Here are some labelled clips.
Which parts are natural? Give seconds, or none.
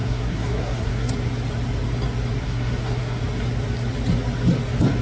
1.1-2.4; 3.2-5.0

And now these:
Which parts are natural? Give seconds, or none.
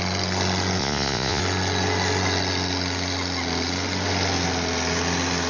0.0-0.8; 1.4-5.5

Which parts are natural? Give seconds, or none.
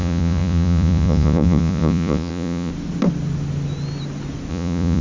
2.7-4.5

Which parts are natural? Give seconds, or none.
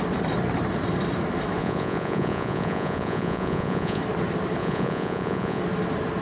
0.0-1.6; 4.0-4.6; 5.6-6.2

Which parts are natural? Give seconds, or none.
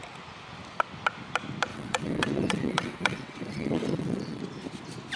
0.0-1.7; 4.4-5.2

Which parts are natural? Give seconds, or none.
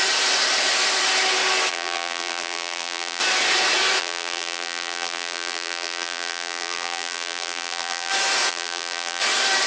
0.0-1.7; 3.2-4.0; 8.1-8.5; 9.2-9.7